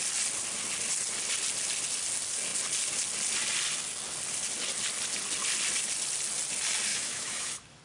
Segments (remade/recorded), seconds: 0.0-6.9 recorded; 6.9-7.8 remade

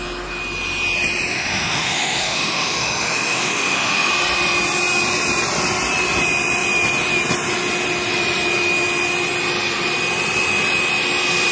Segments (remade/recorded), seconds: 0.0-1.3 recorded; 1.3-4.1 remade; 4.1-11.5 recorded

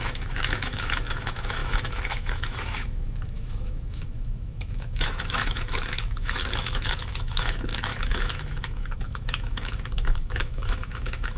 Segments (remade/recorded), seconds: 0.0-11.4 remade

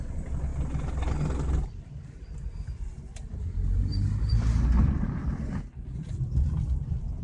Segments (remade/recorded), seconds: 0.0-7.2 recorded